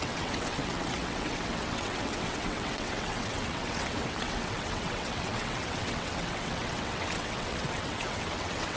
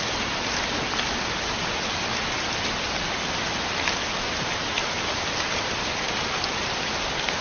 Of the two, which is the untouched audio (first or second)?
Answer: second